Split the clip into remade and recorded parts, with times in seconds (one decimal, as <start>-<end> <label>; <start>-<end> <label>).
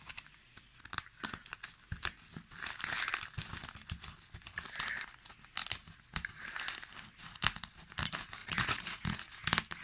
0.0-8.4 recorded; 8.4-9.1 remade; 9.1-9.8 recorded